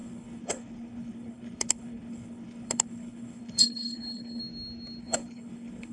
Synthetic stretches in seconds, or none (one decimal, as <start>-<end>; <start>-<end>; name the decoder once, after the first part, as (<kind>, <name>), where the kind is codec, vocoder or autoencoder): 0.0-4.4 (codec, HILCodec); 5.0-5.9